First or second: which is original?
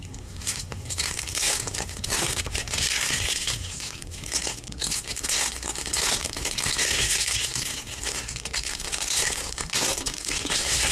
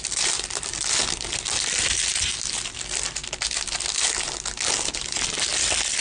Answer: second